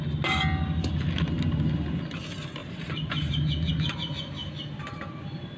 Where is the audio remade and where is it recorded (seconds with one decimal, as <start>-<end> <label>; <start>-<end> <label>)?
0.0-2.6 recorded; 2.6-3.7 remade; 3.7-5.6 recorded